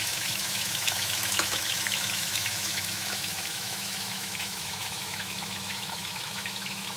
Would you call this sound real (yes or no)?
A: no